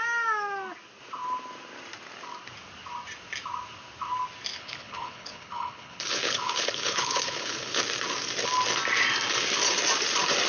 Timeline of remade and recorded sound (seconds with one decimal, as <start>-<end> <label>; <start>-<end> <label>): 0.0-4.5 recorded; 4.5-7.8 remade; 7.8-10.5 recorded